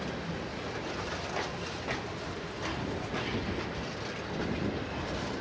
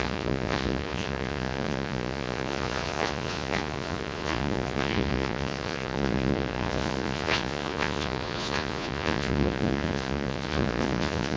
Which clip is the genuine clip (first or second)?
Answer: first